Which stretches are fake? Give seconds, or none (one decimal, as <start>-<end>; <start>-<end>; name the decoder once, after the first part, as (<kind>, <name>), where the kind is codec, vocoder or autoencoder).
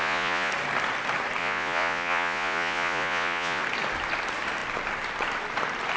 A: 0.0-0.5 (vocoder, Vocos); 1.4-3.6